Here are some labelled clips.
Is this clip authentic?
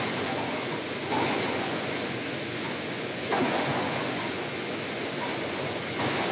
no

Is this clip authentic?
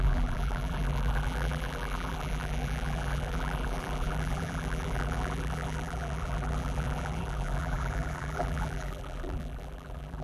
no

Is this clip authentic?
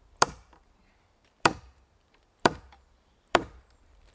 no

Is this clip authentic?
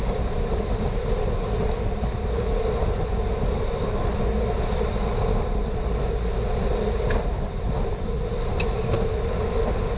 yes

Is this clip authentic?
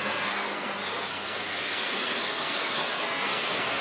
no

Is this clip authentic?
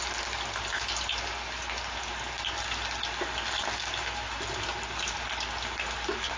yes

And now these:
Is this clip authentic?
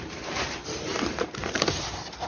no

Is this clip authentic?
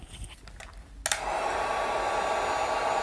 yes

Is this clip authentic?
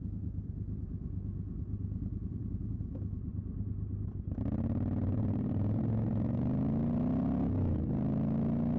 yes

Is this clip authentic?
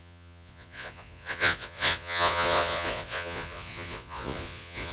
no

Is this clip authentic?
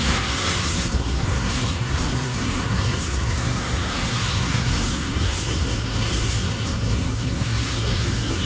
no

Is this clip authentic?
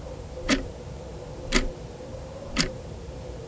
no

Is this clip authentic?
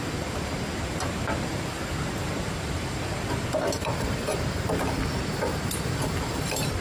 no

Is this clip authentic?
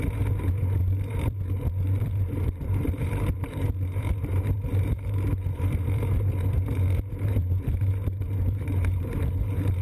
no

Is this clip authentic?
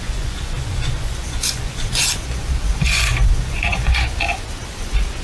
no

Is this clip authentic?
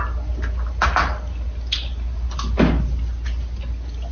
yes